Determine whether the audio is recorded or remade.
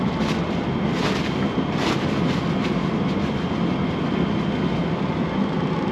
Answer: recorded